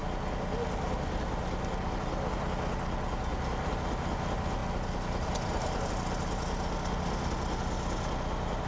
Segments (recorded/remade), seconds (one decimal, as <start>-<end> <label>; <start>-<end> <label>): 0.0-8.7 recorded